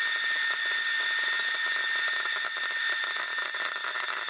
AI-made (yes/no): no